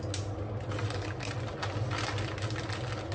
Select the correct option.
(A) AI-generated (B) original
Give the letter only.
B